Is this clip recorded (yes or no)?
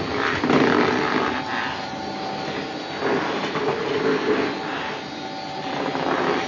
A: yes